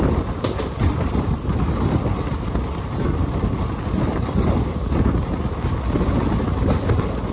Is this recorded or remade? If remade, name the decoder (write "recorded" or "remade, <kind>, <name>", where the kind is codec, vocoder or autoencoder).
recorded